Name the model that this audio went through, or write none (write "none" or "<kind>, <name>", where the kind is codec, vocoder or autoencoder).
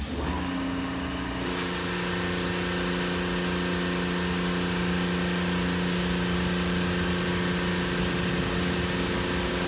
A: none